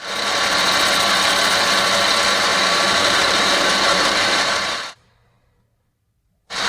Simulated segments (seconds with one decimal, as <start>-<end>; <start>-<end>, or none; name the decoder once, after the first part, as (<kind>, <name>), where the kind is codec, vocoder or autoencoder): 2.5-6.7 (vocoder, BigVGAN v2)